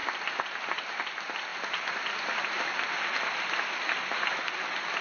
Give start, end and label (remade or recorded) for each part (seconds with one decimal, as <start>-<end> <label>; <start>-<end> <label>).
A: 0.0-5.0 recorded